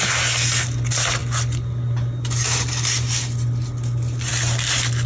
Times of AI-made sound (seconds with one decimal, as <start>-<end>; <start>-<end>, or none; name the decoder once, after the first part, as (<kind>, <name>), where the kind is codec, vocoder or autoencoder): none